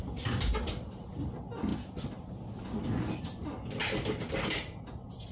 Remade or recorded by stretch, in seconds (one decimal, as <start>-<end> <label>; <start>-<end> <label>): 0.0-5.3 recorded